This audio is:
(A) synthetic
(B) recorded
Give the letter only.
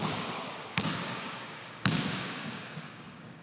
A